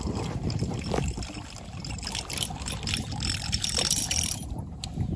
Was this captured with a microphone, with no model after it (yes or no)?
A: yes